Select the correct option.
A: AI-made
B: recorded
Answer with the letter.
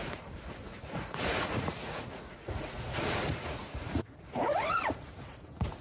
A